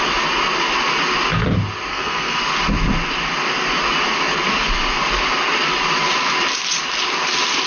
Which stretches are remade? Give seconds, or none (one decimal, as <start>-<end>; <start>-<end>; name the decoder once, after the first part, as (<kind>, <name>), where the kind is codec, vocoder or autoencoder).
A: 1.9-2.4 (codec, SNAC)

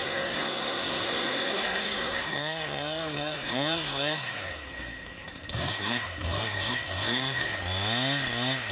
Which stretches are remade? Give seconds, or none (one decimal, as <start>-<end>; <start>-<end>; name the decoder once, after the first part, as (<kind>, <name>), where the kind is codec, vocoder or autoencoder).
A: 0.0-7.6 (codec, SNAC)

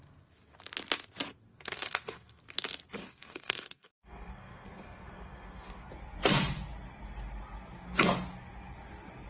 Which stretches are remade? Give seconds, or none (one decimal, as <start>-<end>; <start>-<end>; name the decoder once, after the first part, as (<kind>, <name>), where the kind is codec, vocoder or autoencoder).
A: 1.5-2.4 (codec, SNAC); 3.0-5.9

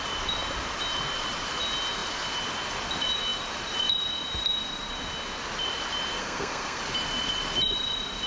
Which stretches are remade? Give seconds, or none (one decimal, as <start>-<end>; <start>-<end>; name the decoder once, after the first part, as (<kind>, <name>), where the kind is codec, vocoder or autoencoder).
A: 6.2-6.8 (codec, SNAC)